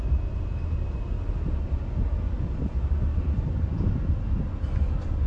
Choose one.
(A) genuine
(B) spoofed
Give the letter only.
A